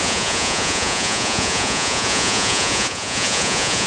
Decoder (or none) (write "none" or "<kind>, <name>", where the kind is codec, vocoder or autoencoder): vocoder, Vocos